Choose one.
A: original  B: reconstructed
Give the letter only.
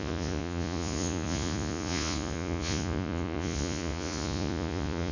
B